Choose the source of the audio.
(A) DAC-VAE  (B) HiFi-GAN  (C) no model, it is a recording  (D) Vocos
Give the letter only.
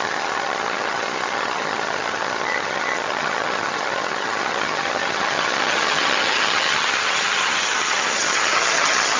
B